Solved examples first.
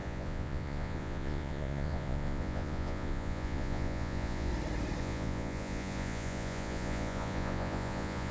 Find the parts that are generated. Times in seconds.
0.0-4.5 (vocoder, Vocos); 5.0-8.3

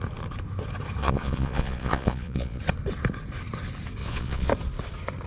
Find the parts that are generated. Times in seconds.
1.0-2.6 (vocoder, Vocos); 4.0-4.5

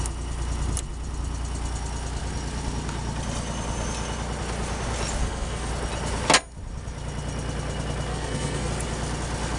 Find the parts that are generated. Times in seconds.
5.2-5.7 (codec, SNAC); 8.1-8.7